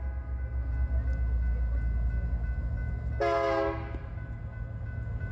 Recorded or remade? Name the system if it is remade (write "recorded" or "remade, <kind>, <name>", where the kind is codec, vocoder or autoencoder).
recorded